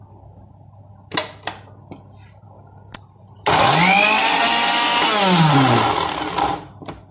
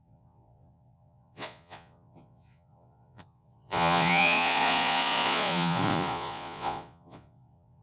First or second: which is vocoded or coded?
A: second